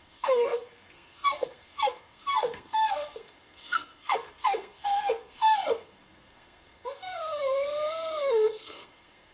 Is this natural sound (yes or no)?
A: no